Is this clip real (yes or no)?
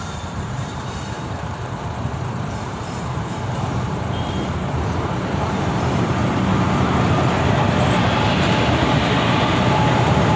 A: no